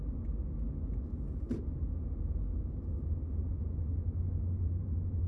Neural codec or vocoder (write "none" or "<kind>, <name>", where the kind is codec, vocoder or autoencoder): none